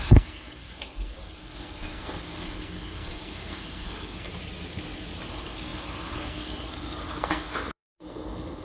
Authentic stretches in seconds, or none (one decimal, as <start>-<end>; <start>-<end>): 4.3-5.3